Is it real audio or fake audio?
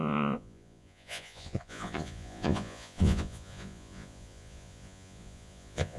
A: fake